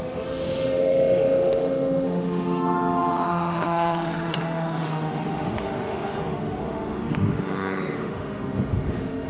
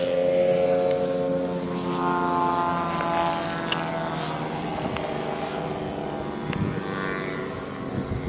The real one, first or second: second